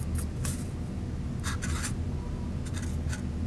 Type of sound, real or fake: real